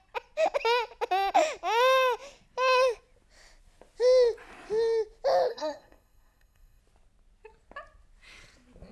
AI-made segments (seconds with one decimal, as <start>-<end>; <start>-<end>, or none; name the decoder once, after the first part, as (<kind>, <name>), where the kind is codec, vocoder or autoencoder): 5.5-6.8 (codec, SNAC)